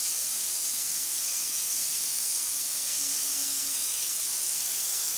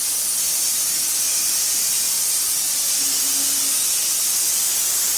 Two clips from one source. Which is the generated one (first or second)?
first